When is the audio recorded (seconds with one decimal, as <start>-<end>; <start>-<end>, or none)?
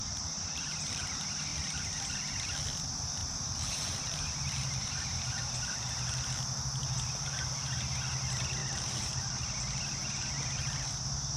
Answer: 1.0-3.2; 5.5-8.6; 10.3-11.4